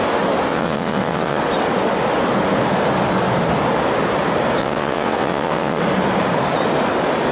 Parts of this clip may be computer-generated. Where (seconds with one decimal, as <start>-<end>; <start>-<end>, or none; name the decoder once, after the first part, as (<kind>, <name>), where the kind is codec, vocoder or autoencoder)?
0.5-1.4 (vocoder, WaveNeXt); 4.6-5.8